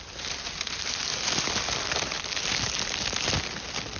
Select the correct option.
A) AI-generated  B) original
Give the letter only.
B